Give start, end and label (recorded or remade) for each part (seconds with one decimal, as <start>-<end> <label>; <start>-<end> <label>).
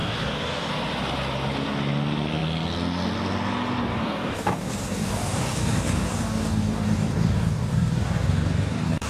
0.0-0.7 remade; 0.7-3.9 recorded; 3.9-9.1 remade